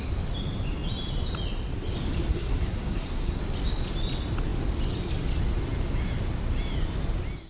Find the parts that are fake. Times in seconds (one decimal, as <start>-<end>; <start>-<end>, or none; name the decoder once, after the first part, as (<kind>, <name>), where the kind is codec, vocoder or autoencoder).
2.3-3.4 (codec, SNAC)

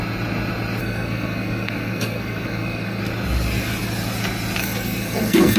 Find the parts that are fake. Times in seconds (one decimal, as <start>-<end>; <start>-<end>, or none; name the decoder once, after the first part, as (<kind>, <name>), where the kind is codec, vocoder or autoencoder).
0.8-3.0 (codec, SNAC); 4.6-5.6